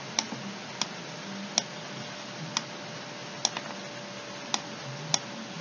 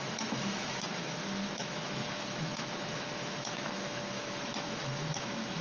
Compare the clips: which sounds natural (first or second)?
first